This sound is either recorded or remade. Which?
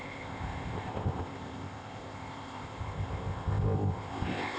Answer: remade